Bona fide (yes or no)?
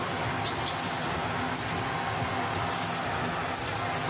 yes